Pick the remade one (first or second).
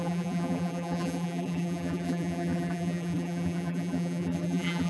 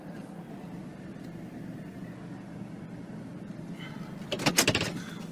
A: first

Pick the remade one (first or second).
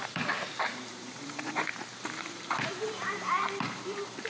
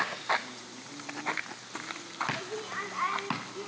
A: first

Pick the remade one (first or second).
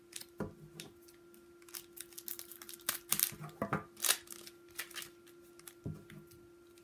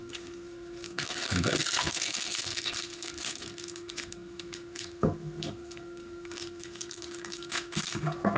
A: second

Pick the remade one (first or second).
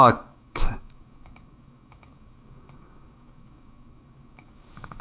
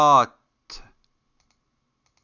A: first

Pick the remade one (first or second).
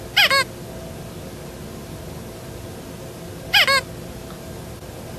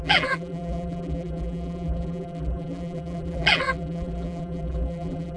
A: second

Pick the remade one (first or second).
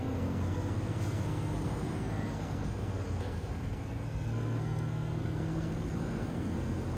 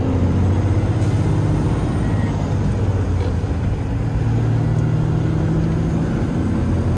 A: first